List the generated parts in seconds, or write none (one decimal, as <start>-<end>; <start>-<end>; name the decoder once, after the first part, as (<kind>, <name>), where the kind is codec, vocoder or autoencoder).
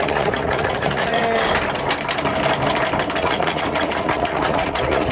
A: 0.0-1.2 (vocoder, Vocos); 3.2-5.1